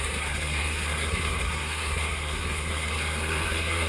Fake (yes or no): yes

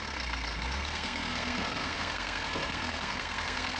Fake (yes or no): yes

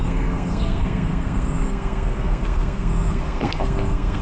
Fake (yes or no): yes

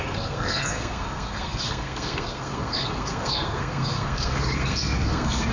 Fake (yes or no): yes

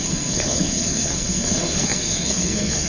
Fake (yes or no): yes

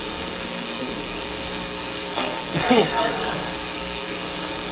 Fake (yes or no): yes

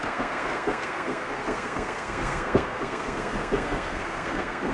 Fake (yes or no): yes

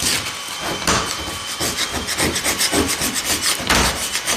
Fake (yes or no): no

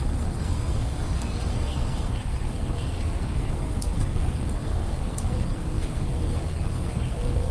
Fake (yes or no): yes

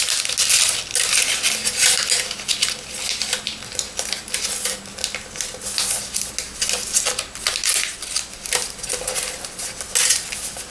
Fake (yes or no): no